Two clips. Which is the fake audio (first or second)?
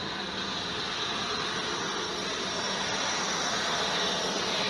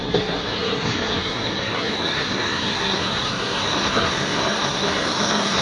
second